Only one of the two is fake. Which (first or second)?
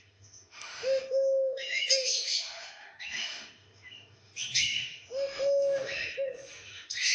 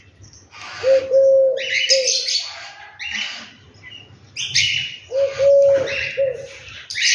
first